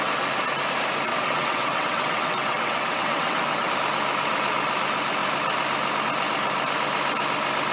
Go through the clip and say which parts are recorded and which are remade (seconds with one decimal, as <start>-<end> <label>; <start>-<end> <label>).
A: 0.0-1.1 recorded; 1.1-3.7 remade; 3.7-7.7 recorded